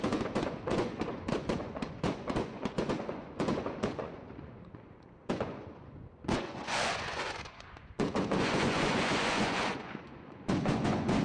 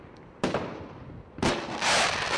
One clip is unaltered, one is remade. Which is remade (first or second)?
first